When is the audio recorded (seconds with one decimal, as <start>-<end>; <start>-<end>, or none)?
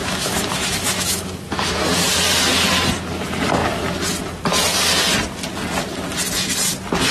1.8-7.1